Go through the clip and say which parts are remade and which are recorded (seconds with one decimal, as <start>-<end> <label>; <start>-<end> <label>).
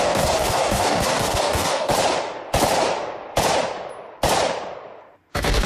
0.0-1.9 remade; 1.9-5.3 recorded; 5.3-5.7 remade